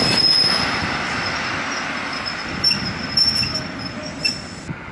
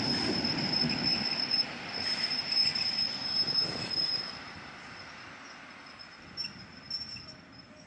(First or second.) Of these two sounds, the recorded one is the first